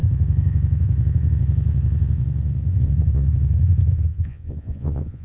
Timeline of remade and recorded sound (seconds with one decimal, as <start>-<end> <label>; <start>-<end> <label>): 0.0-5.2 remade